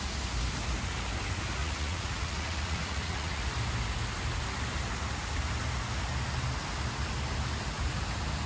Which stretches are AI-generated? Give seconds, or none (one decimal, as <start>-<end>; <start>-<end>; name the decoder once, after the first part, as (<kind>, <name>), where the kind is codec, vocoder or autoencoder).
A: 1.6-3.4 (vocoder, Vocos)